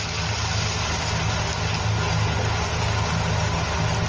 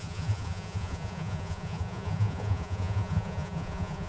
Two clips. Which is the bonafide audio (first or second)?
first